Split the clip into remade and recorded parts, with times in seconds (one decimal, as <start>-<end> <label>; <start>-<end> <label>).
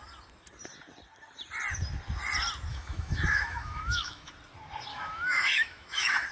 0.0-2.7 recorded; 2.7-4.3 remade; 4.3-4.9 recorded; 4.9-6.3 remade